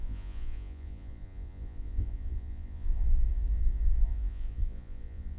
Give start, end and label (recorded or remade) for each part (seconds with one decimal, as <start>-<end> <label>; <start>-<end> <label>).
0.0-5.4 remade